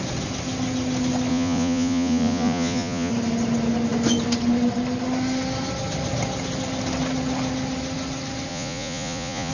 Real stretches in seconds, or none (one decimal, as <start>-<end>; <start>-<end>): 0.0-1.3; 3.1-8.5